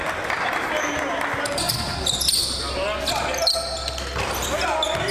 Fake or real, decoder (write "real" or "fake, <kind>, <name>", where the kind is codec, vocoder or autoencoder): real